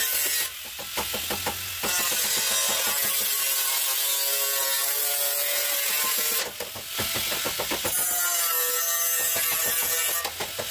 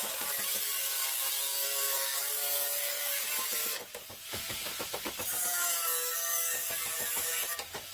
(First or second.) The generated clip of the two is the second